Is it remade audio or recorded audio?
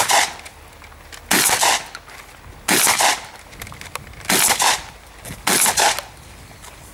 recorded